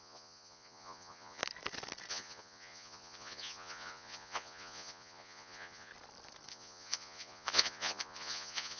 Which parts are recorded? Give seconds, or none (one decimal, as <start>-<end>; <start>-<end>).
1.4-2.1; 5.9-6.5